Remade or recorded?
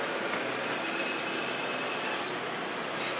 recorded